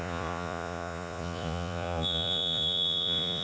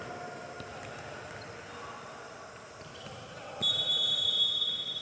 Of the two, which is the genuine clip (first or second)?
second